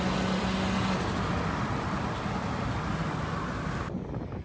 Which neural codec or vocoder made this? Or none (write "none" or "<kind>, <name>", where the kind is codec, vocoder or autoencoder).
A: none